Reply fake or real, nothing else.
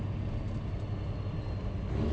real